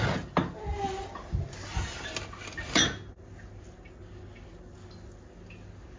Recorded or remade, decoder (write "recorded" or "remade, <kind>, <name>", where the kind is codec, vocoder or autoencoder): recorded